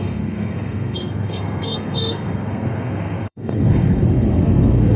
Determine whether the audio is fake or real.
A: fake